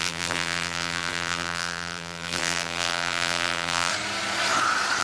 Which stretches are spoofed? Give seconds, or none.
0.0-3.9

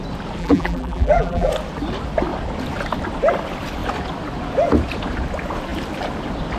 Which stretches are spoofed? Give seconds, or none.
0.4-1.5

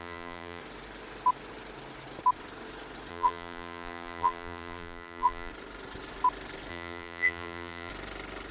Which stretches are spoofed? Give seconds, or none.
0.0-0.6; 3.1-5.5; 6.7-7.9

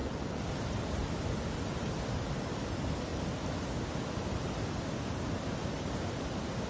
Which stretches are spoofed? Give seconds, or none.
none

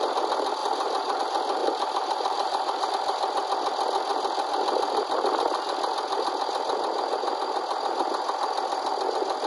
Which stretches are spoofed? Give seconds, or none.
0.6-1.2; 1.6-2.9

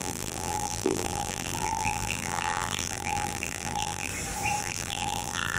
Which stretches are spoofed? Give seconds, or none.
0.0-4.1; 4.6-5.6

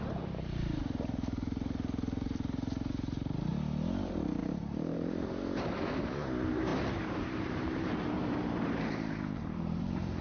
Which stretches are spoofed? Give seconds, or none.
0.0-3.5; 4.0-10.2